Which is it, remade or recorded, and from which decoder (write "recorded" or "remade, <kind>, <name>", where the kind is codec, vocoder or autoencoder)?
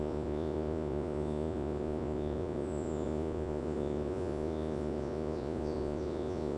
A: remade, vocoder, Vocos